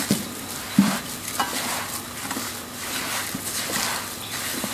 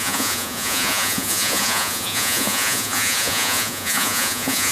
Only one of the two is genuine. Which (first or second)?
first